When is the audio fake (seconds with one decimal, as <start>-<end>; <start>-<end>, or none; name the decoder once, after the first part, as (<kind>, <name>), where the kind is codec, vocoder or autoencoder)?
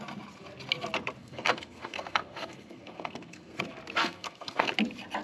1.2-3.6 (codec, SNAC); 4.0-4.7